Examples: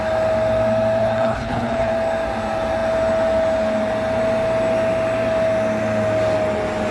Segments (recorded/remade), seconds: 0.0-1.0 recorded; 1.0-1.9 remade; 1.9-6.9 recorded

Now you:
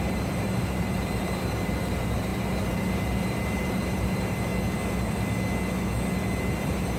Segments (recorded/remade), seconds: 0.0-4.5 remade; 4.5-6.4 recorded; 6.4-7.0 remade

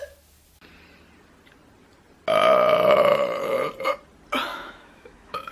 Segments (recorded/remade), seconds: 0.0-4.5 recorded; 4.5-5.5 remade